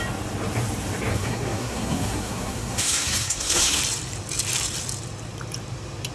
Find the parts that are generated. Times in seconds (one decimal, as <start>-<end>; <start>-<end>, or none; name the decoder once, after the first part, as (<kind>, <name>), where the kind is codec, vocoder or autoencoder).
1.1-3.8 (codec, SNAC)